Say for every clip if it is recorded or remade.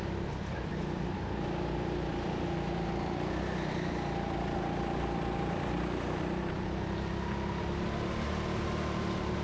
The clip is recorded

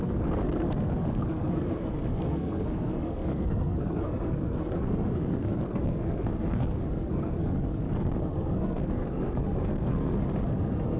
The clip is remade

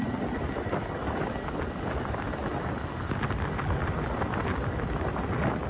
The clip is recorded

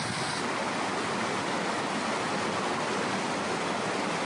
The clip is recorded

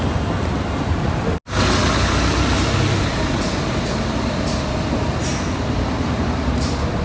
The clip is recorded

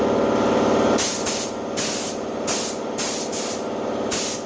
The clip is recorded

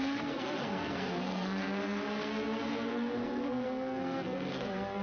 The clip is remade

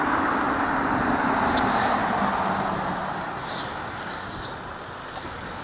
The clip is recorded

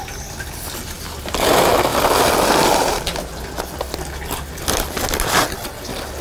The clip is recorded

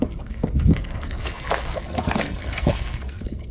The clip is remade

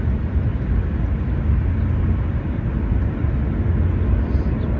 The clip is recorded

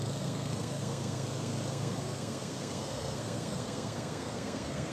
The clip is remade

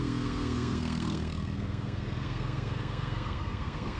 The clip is remade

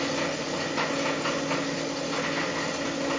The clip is recorded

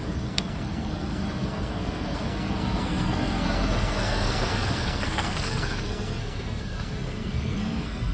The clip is remade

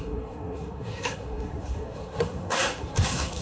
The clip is remade